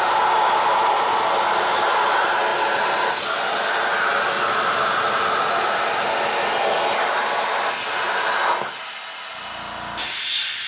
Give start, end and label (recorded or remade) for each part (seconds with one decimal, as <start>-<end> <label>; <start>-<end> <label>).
0.0-10.7 recorded